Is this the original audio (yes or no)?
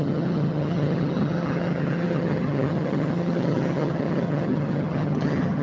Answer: no